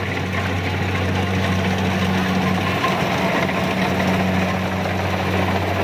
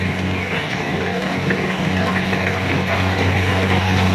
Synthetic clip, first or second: second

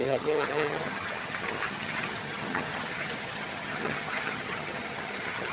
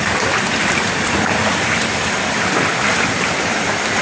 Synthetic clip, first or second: first